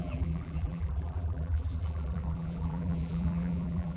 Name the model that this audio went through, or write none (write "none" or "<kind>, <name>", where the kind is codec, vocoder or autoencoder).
vocoder, BigVGAN v2